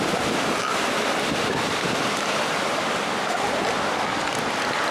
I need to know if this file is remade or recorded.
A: recorded